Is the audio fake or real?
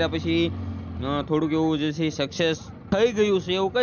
real